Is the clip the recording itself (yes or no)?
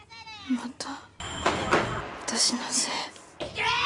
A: yes